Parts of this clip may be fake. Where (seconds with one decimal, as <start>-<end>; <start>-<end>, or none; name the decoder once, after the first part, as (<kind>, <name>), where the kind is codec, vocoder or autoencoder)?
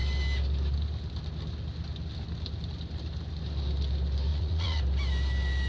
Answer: 4.3-4.8 (vocoder, Vocos)